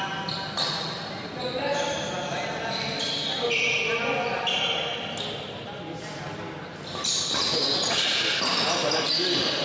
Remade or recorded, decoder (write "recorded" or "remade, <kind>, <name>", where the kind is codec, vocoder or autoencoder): recorded